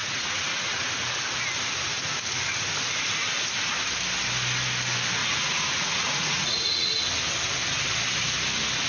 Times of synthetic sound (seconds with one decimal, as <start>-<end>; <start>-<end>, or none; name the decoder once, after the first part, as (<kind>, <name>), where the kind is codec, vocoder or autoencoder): 0.0-0.8 (vocoder, Vocos); 5.2-6.9